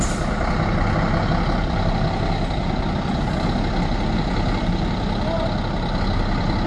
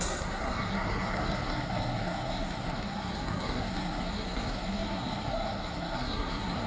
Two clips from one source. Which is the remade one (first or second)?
second